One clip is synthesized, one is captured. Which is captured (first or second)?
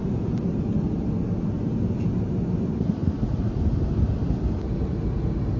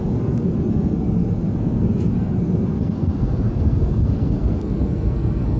first